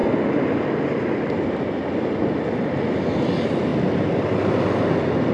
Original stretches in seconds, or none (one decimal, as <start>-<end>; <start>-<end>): 0.0-5.3